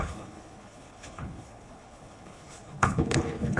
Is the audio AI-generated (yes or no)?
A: yes